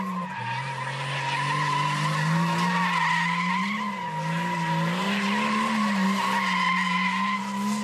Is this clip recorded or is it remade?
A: recorded